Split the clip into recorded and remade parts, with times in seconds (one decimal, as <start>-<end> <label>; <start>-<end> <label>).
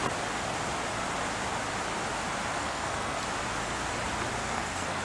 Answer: 0.0-2.5 recorded; 2.5-3.2 remade; 3.2-4.4 recorded; 4.4-5.0 remade